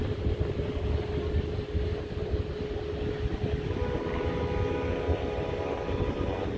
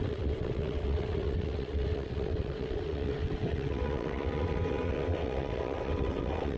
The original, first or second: first